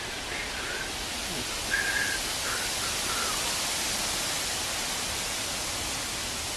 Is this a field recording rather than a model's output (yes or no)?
yes